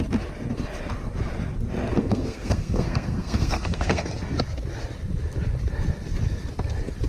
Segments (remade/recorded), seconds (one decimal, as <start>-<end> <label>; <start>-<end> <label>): 0.0-1.9 recorded; 1.9-4.1 remade; 4.1-7.1 recorded